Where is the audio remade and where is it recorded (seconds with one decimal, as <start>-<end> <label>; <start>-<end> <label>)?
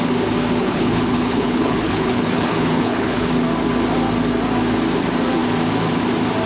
0.0-0.6 recorded; 0.6-3.3 remade; 3.3-6.5 recorded